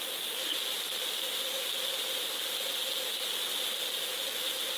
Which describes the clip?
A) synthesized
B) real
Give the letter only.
B